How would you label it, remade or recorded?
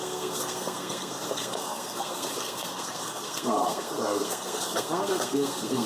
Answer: remade